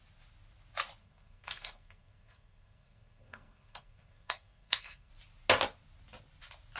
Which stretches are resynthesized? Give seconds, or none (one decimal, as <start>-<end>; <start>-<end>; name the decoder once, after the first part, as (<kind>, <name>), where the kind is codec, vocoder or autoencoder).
1.0-5.1 (codec, SNAC)